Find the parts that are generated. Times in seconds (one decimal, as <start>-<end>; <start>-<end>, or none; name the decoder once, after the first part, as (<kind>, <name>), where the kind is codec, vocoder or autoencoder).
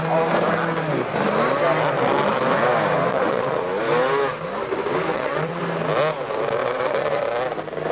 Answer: 3.1-3.6 (vocoder, WaveNeXt); 5.1-5.6; 6.6-7.2